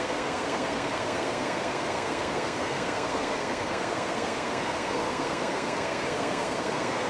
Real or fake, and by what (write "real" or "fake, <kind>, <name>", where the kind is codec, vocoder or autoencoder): fake, codec, SNAC